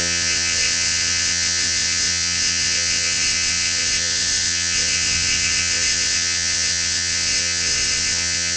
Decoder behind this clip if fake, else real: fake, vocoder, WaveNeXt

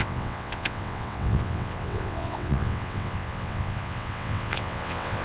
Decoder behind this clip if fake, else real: fake, vocoder, WaveNeXt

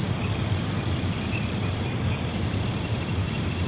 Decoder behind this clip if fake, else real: real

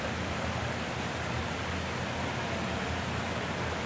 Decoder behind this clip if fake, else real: real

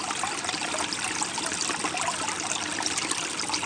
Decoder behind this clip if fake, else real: real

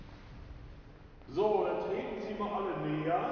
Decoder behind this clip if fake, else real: real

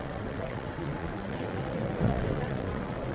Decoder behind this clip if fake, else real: fake, vocoder, WaveNeXt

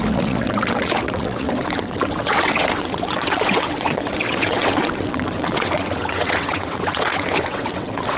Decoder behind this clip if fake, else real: fake, vocoder, WaveNeXt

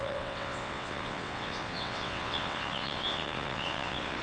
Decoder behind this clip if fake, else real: fake, vocoder, WaveNeXt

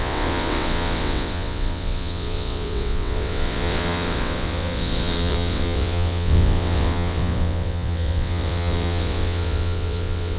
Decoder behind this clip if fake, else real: fake, vocoder, WaveNeXt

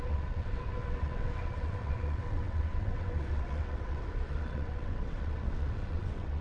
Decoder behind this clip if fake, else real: fake, vocoder, WaveNeXt